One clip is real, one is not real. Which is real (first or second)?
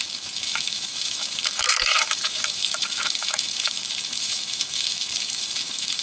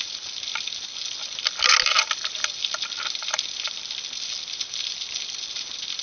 second